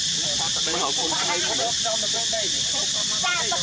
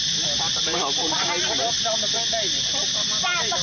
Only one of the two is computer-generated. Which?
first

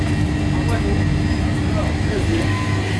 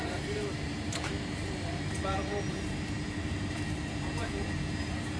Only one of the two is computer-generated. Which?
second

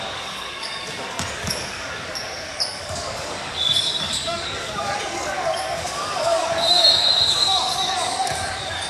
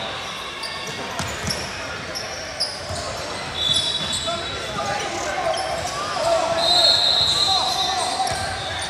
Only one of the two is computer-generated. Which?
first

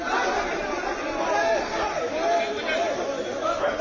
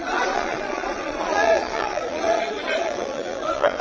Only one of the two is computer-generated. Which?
second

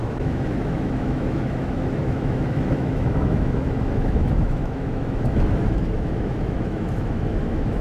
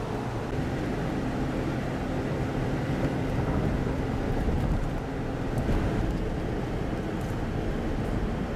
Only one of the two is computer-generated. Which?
first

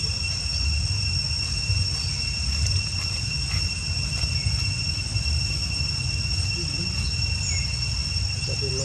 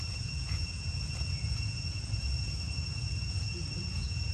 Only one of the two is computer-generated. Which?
second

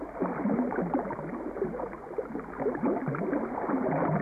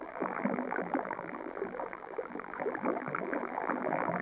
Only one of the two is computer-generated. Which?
second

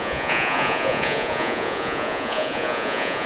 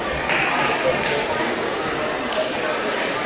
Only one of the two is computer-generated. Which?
first